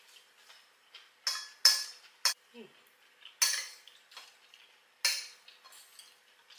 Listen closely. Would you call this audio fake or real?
real